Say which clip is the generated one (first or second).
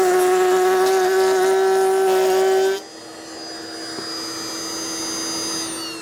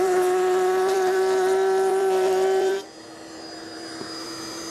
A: second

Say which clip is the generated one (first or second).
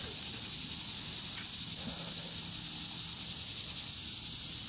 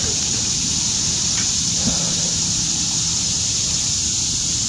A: second